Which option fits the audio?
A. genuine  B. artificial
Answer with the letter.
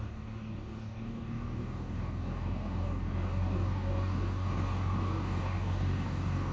B